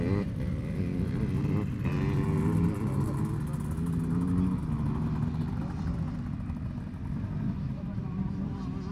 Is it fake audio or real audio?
real